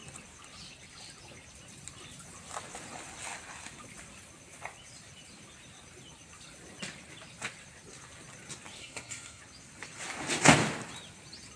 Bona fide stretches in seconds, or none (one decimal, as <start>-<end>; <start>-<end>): 0.0-8.8; 9.4-11.6